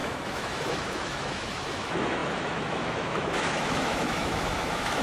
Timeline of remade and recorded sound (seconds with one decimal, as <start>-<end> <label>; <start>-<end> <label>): 0.0-5.0 remade